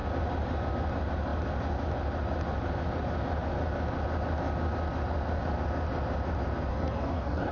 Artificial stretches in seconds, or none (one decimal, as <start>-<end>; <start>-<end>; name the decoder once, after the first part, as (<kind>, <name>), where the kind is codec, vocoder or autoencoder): 6.7-7.5 (codec, DAC)